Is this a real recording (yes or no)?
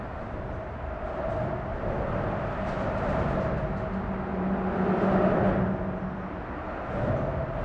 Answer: yes